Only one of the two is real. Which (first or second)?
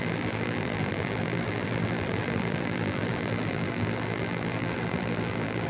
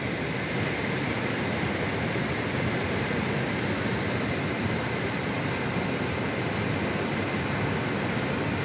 second